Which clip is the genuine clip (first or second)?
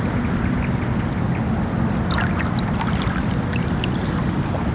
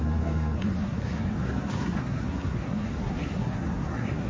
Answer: first